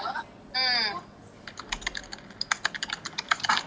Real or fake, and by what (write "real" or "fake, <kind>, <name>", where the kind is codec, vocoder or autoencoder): real